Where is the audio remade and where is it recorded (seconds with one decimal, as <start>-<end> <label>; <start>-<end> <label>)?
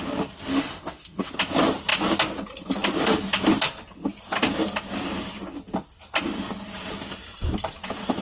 0.0-0.5 recorded; 0.5-1.3 remade; 1.3-8.2 recorded